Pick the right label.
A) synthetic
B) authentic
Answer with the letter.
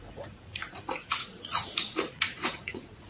A